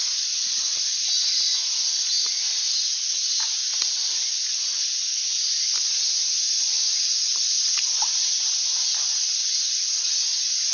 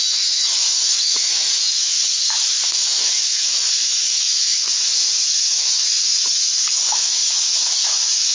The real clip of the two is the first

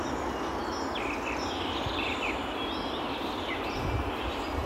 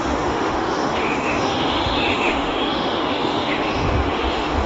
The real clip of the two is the first